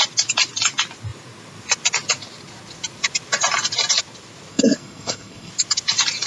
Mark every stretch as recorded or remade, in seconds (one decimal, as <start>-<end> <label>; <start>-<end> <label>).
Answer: 0.0-4.5 recorded; 4.5-5.5 remade; 5.5-6.3 recorded